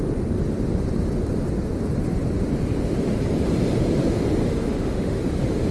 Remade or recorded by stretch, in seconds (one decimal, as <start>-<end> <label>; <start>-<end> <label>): 0.0-4.4 recorded; 4.4-5.2 remade; 5.2-5.7 recorded